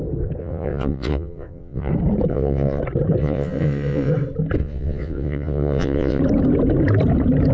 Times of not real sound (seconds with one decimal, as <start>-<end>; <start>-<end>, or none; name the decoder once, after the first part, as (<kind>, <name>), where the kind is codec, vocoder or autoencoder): 0.4-1.9 (vocoder, WaveNeXt); 2.3-2.8; 3.2-4.1; 4.6-6.2